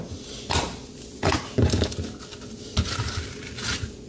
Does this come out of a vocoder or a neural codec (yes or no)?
no